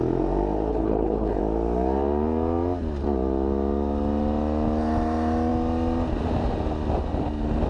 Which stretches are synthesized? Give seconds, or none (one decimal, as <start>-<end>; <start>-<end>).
0.7-1.4

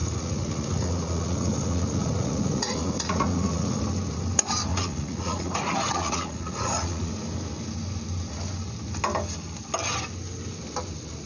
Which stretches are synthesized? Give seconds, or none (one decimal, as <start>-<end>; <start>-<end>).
0.0-3.8; 4.7-7.1

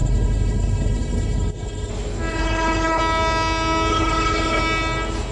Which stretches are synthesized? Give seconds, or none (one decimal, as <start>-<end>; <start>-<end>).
0.0-1.9; 2.3-3.0; 3.9-4.6

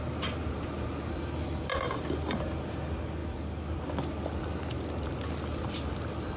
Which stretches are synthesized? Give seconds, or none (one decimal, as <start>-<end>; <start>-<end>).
none